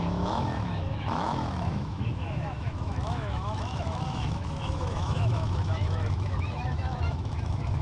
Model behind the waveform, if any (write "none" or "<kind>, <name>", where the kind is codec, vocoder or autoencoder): autoencoder, DAC-VAE